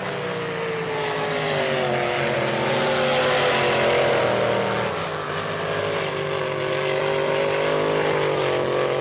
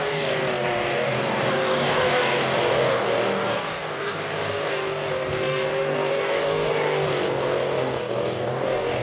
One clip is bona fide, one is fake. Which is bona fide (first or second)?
first